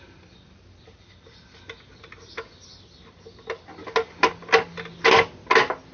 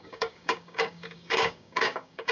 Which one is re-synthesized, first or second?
second